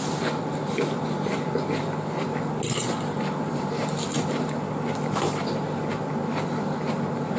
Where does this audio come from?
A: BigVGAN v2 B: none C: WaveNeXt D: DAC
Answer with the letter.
B